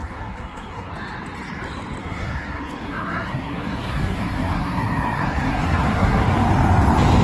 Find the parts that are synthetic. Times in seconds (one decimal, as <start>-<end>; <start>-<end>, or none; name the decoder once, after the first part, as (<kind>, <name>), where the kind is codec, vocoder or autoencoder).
0.0-0.9 (codec, SNAC); 2.0-6.3